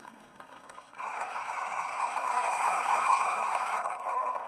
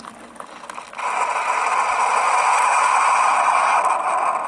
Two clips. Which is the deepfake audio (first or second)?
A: first